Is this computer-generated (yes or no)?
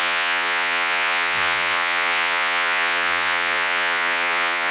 yes